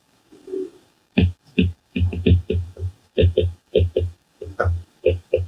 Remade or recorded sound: remade